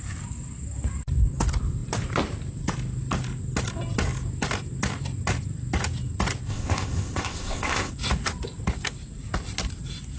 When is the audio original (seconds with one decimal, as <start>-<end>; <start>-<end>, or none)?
0.0-6.5; 7.9-10.2